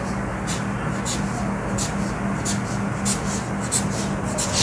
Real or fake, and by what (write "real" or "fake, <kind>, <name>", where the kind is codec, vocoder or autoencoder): real